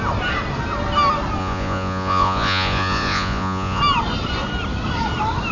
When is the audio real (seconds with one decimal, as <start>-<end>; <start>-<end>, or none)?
0.0-1.4; 3.8-5.5